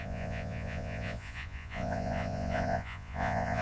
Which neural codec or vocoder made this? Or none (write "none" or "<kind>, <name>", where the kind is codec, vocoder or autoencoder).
vocoder, Vocos